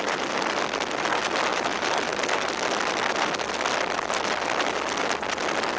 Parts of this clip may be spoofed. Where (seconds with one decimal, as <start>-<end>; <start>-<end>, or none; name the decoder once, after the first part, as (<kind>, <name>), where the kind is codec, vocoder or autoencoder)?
none